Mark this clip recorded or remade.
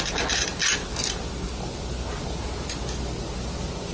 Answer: recorded